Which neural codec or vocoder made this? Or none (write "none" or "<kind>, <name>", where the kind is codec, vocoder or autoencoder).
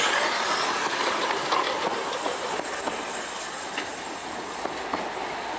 none